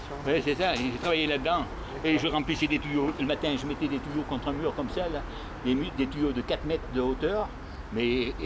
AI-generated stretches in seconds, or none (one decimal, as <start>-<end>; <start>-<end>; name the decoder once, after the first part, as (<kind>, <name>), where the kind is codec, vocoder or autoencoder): 1.8-3.2 (codec, DAC)

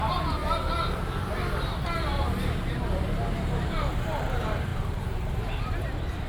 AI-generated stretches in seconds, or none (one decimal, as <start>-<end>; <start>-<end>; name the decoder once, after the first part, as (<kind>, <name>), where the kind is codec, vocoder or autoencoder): 0.0-0.4 (vocoder, BigVGAN v2); 2.8-6.3